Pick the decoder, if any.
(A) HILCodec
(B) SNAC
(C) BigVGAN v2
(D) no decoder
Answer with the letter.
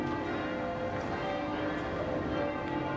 D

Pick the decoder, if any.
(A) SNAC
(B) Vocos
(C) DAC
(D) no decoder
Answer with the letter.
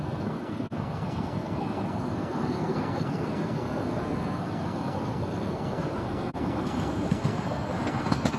A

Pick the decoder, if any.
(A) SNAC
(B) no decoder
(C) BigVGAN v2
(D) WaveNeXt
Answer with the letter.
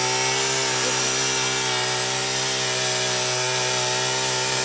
B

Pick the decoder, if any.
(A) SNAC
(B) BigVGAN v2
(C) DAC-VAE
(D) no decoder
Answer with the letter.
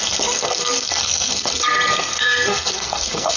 A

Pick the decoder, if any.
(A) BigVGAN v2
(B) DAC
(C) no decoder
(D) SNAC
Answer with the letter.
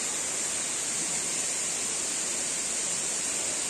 C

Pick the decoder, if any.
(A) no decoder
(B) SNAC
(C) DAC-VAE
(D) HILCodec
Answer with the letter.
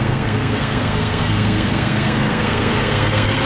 B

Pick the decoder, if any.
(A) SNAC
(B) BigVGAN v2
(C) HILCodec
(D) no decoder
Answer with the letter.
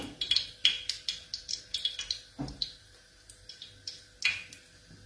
D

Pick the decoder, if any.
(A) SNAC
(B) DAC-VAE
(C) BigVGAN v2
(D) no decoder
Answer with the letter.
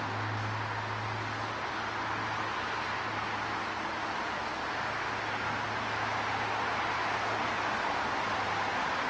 D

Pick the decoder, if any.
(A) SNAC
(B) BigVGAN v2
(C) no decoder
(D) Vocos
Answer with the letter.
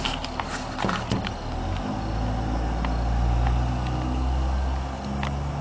C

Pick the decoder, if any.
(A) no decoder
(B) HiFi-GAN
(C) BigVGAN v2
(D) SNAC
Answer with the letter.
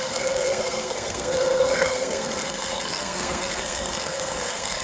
D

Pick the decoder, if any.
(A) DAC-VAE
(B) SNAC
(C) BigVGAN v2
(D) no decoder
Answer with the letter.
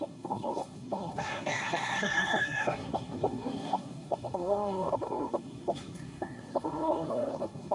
B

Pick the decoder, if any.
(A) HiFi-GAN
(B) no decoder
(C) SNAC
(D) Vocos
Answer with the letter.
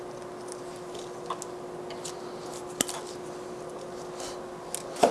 B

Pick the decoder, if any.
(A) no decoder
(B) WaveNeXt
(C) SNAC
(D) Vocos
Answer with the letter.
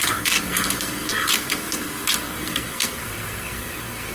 C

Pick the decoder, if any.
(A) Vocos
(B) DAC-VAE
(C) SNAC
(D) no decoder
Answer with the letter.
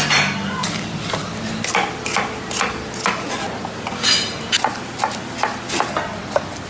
D